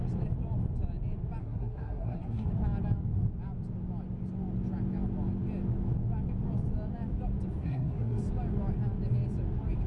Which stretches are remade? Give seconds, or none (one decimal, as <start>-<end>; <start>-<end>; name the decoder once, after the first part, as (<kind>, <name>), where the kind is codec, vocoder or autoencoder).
1.4-2.5 (codec, SNAC); 7.6-8.2